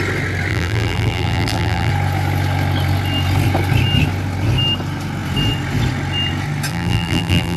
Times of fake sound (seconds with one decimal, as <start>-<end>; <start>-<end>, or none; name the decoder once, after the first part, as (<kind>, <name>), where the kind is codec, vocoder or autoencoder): 0.5-1.9 (vocoder, BigVGAN v2); 6.7-7.6